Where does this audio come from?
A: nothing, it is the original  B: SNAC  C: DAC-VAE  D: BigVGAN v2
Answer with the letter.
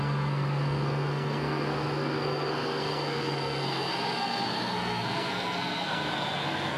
B